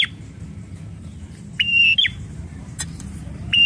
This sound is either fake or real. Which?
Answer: fake